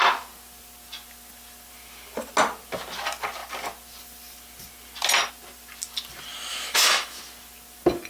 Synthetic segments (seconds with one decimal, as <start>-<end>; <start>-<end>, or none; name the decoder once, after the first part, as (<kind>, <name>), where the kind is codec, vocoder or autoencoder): 6.5-7.2 (autoencoder, DAC-VAE)

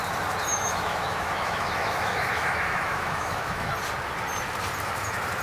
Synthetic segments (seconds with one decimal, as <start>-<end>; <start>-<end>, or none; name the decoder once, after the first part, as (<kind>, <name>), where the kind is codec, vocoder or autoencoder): 0.5-3.7 (autoencoder, DAC-VAE)

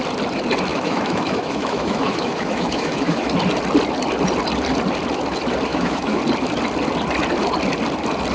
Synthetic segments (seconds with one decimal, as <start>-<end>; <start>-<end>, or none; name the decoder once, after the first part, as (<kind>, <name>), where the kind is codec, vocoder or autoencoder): 0.7-3.3 (autoencoder, DAC-VAE); 5.7-6.2